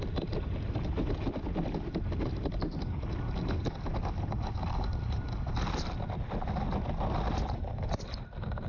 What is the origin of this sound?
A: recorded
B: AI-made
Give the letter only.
A